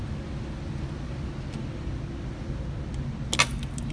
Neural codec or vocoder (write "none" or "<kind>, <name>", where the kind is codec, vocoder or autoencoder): none